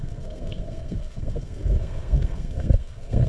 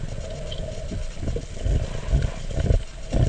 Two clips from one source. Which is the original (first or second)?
second